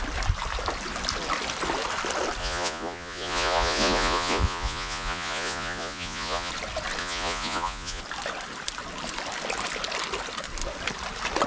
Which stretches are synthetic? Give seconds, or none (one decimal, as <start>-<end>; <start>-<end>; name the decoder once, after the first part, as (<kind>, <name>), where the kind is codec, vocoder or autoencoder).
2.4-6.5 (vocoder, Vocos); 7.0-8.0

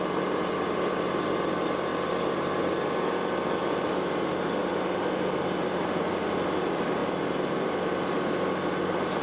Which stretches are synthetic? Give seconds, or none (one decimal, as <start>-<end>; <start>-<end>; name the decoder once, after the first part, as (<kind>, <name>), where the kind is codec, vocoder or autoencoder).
none

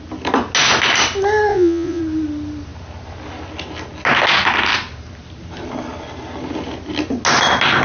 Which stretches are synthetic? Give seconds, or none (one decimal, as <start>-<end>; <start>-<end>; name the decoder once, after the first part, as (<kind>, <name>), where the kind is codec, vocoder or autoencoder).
1.5-2.0 (vocoder, Vocos)

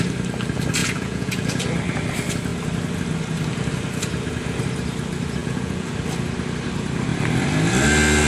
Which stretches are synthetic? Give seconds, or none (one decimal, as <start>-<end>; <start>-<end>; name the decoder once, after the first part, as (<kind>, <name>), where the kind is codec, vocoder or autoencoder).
0.8-1.6 (vocoder, Vocos); 5.4-5.9